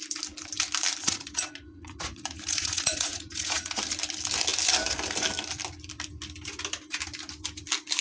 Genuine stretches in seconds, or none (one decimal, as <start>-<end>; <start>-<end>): 0.0-1.0; 3.8-8.0